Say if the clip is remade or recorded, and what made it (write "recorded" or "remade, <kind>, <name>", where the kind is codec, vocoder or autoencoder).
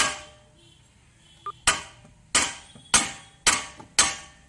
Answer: recorded